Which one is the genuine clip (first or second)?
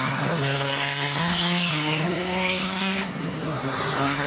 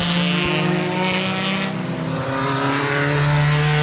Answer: second